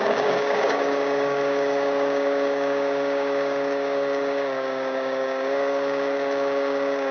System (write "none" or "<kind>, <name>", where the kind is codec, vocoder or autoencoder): codec, DAC